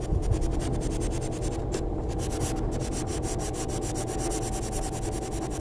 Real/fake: real